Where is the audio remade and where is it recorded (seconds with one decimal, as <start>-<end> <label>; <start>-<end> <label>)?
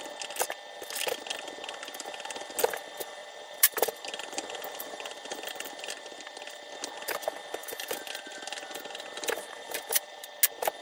0.0-3.2 recorded; 3.2-6.7 remade; 6.7-7.6 recorded; 7.6-10.4 remade; 10.4-10.8 recorded